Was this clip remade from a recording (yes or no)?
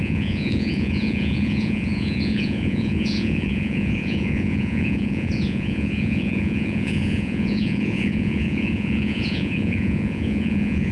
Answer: yes